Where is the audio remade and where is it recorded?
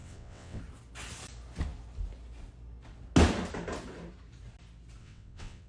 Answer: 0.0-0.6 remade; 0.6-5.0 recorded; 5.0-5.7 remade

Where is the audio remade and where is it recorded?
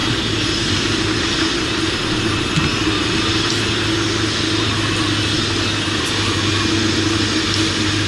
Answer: 0.0-8.1 recorded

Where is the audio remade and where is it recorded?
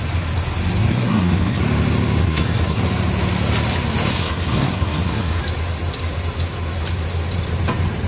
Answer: 0.0-0.9 recorded; 0.9-1.6 remade; 1.6-2.2 recorded; 2.2-2.8 remade; 2.8-4.1 recorded; 4.1-5.4 remade; 5.4-8.1 recorded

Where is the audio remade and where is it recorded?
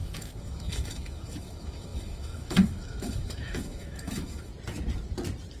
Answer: 0.0-4.5 remade; 4.5-5.6 recorded